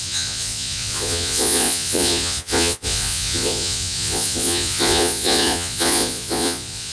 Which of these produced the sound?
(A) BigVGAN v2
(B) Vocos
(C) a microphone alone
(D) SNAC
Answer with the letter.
B